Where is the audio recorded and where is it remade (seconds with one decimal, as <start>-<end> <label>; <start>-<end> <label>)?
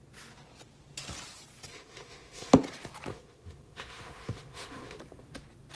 0.0-1.7 recorded; 1.7-2.5 remade; 2.5-3.1 recorded; 3.1-5.0 remade; 5.0-5.7 recorded